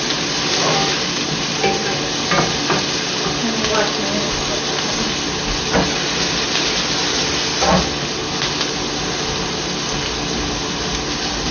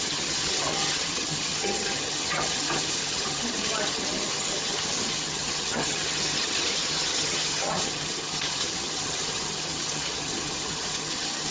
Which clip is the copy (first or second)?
second